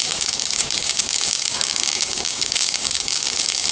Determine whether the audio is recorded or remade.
remade